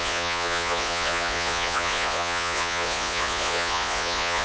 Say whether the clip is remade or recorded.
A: remade